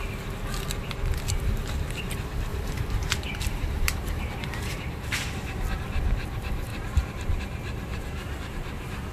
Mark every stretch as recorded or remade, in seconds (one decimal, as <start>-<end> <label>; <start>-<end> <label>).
0.0-2.5 recorded; 2.5-5.3 remade; 5.3-6.7 recorded; 6.7-7.4 remade; 7.4-7.9 recorded; 7.9-8.5 remade; 8.5-9.1 recorded